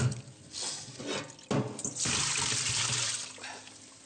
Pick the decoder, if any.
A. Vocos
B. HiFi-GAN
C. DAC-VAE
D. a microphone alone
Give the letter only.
D